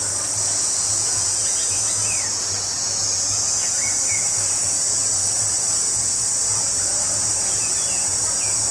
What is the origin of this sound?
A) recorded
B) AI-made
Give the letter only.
B